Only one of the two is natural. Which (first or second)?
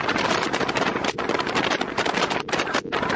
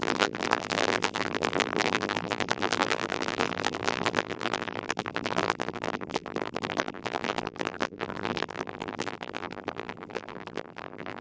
first